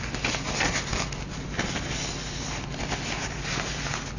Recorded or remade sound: recorded